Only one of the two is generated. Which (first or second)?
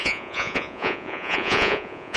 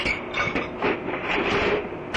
first